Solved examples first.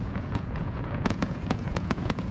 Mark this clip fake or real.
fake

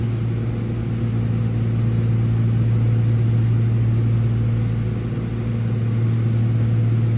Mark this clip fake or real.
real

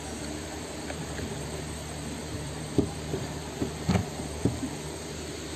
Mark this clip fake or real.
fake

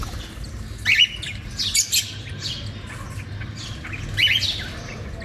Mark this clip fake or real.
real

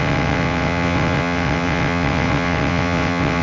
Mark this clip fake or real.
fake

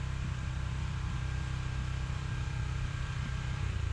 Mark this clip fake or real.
fake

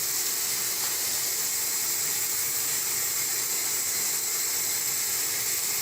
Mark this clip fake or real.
real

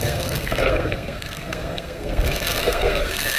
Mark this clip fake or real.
fake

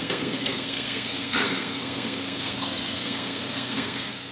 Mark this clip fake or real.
fake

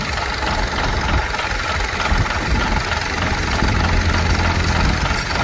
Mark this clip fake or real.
real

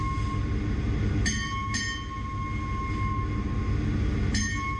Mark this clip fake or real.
real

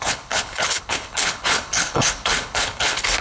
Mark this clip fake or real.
fake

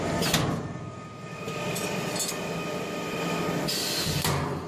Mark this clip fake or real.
real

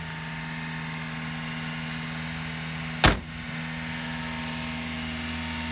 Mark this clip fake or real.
real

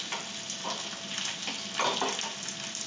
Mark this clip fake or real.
real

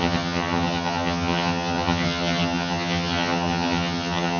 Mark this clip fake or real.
fake